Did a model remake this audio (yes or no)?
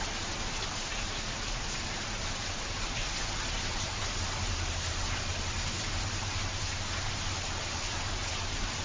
no